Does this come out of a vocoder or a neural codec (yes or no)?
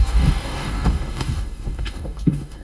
yes